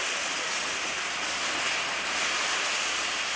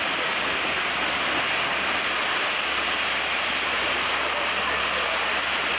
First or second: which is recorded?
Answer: first